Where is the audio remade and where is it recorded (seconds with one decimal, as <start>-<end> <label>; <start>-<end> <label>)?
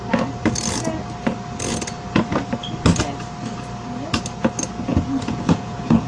0.0-4.9 recorded; 4.9-6.1 remade